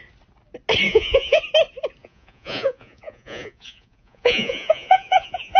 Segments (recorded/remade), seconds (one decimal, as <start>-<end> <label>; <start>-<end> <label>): 0.0-0.9 recorded; 0.9-1.4 remade; 1.4-2.0 recorded; 2.0-5.6 remade